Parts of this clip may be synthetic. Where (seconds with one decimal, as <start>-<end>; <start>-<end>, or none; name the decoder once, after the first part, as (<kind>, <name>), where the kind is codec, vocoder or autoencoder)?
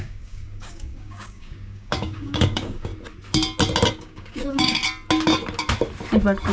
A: 0.0-2.9 (codec, DAC); 3.9-4.8